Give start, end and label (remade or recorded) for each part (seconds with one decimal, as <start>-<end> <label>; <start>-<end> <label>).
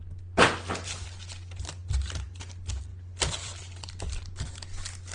0.0-2.9 recorded; 2.9-4.2 remade; 4.2-5.1 recorded